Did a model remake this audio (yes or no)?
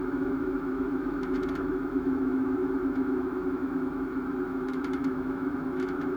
yes